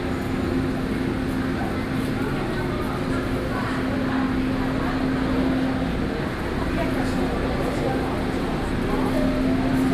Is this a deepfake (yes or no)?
no